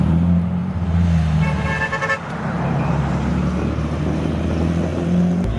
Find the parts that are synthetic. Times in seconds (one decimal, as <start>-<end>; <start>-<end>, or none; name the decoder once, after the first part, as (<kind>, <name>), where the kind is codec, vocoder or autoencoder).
4.9-5.6 (vocoder, BigVGAN v2)